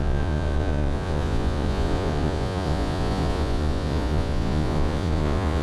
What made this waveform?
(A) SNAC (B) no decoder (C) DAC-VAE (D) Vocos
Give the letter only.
D